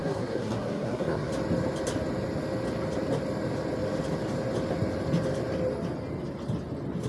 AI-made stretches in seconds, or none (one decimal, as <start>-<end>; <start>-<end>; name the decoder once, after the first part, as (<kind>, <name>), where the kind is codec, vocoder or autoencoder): 0.0-1.3 (codec, SNAC)